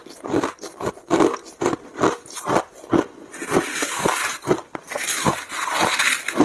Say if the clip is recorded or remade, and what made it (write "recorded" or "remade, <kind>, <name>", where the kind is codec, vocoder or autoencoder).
recorded